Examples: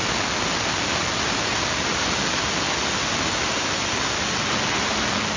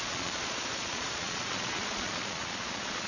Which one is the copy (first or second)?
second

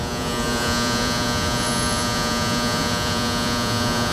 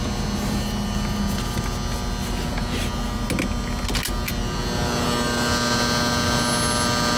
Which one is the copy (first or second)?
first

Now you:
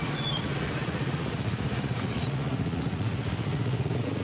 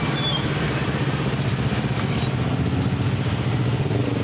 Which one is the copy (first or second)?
first